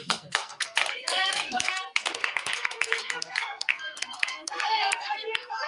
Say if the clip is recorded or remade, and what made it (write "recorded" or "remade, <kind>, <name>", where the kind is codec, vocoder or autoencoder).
remade, codec, SNAC